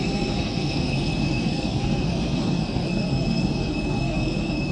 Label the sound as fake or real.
fake